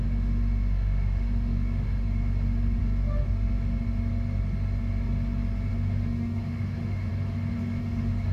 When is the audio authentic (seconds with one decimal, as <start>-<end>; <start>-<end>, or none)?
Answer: 2.8-5.7; 7.1-7.8